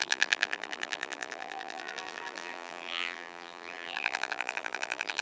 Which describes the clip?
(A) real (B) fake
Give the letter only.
B